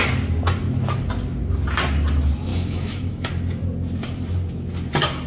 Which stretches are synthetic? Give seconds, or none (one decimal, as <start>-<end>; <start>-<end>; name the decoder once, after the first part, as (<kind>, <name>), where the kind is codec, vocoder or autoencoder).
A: 2.5-3.3 (autoencoder, DAC-VAE)